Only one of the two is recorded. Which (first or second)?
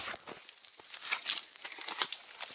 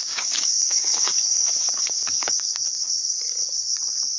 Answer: first